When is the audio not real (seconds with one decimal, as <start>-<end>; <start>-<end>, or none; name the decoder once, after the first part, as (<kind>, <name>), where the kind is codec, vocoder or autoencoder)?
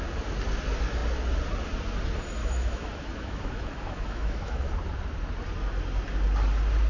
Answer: 2.4-4.7 (autoencoder, DAC-VAE)